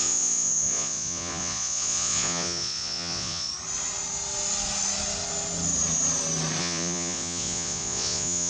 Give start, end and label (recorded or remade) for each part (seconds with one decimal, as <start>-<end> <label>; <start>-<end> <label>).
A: 0.0-3.5 remade; 3.5-6.6 recorded; 6.6-8.5 remade